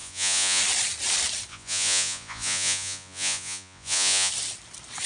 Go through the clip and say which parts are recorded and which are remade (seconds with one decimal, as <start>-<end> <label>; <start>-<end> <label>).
0.0-0.6 remade; 0.6-1.5 recorded; 1.5-4.3 remade; 4.3-5.1 recorded